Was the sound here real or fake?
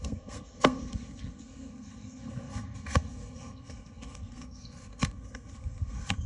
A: fake